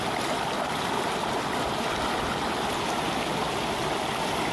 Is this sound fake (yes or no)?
no